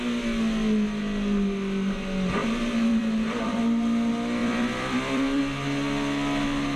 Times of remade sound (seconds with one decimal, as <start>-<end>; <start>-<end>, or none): 2.4-3.6; 4.4-5.4